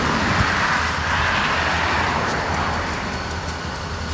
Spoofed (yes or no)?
no